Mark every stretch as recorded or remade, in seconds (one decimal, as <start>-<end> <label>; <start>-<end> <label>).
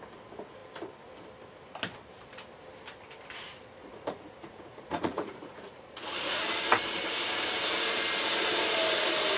0.0-3.8 recorded; 3.8-6.4 remade; 6.4-9.4 recorded